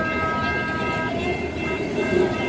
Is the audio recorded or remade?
recorded